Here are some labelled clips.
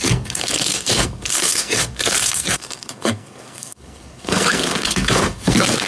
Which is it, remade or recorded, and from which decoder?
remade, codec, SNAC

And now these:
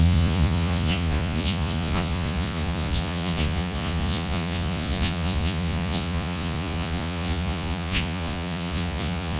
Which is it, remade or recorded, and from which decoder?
remade, vocoder, Vocos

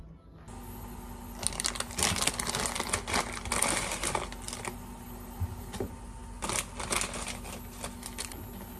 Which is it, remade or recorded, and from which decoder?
recorded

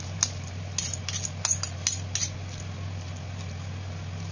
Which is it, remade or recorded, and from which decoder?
recorded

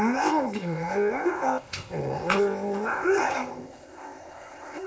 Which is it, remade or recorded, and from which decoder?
remade, codec, ZipCodec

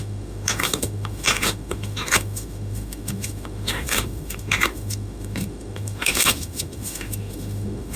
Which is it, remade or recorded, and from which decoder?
remade, autoencoder, DAC-VAE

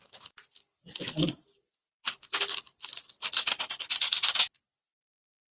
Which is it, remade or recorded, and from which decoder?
recorded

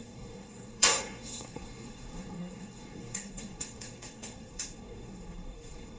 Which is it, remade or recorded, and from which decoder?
remade, codec, SNAC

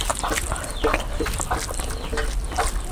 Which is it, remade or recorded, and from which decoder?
remade, vocoder, BigVGAN v2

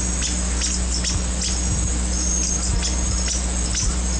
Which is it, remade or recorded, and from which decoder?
recorded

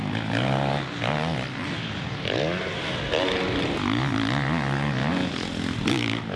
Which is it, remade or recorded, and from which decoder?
recorded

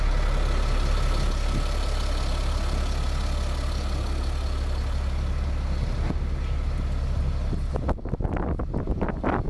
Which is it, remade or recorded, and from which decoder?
recorded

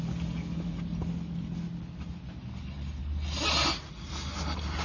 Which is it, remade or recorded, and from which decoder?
recorded